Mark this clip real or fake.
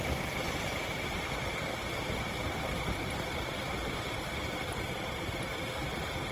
real